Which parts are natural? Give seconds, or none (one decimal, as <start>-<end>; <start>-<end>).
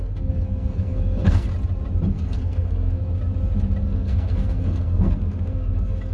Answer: 1.5-2.1; 3.0-3.8